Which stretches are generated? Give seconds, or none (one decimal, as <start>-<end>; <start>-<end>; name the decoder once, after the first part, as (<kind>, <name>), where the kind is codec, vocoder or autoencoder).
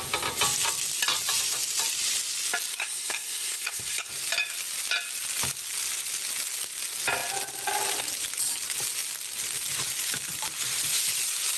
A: 2.8-4.1 (codec, SNAC)